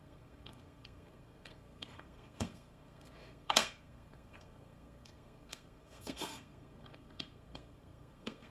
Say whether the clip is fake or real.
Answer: fake